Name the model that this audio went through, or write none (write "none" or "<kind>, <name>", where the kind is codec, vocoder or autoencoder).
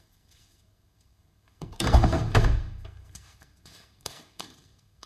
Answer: codec, SNAC